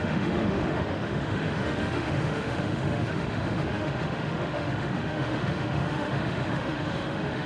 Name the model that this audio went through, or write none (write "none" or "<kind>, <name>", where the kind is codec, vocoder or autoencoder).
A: autoencoder, DAC-VAE